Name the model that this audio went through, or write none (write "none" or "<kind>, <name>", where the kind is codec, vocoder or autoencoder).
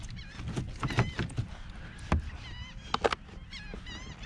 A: none